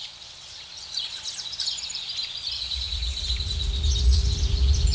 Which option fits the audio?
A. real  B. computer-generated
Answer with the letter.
B